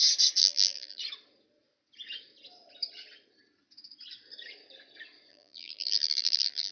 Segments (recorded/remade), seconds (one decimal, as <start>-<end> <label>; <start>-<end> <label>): 0.0-0.4 recorded; 0.4-1.0 remade; 1.0-5.3 recorded; 5.3-6.7 remade